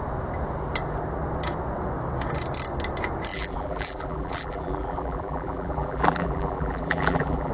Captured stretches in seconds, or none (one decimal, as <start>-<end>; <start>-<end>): 0.0-3.3